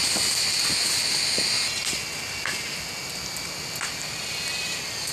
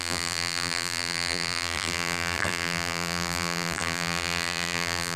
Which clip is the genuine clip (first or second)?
first